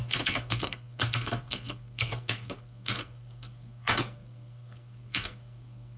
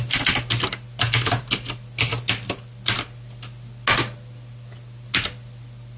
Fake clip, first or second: first